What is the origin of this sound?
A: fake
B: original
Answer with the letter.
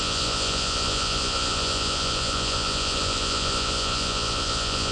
A